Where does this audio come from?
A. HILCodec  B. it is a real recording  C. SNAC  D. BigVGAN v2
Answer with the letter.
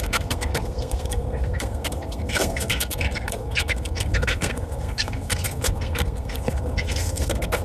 C